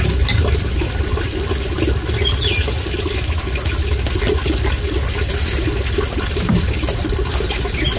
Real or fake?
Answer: real